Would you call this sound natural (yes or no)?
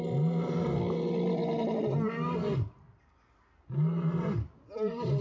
yes